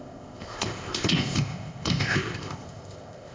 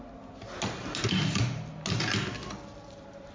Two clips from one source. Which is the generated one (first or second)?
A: first